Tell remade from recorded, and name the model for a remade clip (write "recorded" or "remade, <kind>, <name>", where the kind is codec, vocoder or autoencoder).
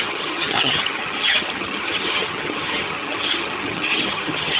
remade, vocoder, HiFi-GAN